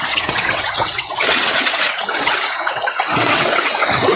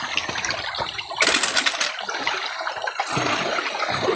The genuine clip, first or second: second